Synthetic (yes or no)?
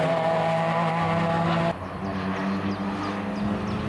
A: no